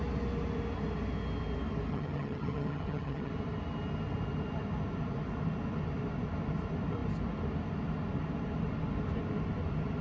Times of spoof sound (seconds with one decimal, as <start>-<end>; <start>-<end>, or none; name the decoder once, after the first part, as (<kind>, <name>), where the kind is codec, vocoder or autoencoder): 1.9-3.3 (vocoder, HiFi-GAN)